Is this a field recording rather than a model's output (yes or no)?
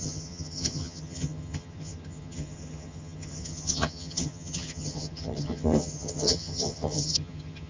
no